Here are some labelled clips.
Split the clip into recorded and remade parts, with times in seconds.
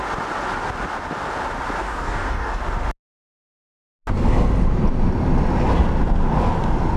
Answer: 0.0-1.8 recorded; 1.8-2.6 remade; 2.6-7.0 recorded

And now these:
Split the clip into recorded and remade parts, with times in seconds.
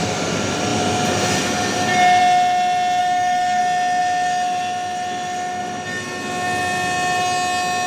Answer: 0.0-3.0 recorded; 3.0-3.6 remade; 3.6-7.9 recorded